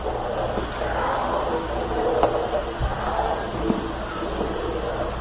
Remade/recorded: recorded